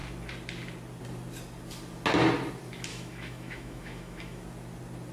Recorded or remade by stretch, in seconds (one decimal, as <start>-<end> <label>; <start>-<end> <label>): 0.0-2.9 recorded; 2.9-4.4 remade; 4.4-5.1 recorded